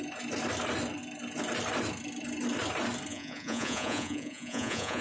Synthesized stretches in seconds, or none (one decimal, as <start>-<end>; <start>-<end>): 3.1-5.0